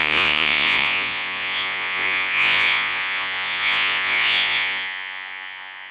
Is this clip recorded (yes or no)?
no